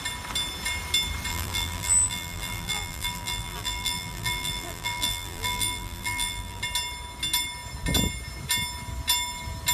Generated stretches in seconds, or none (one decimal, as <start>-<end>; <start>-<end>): 1.3-6.6